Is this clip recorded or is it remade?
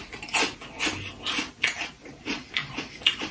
recorded